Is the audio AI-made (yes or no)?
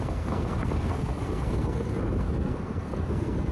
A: yes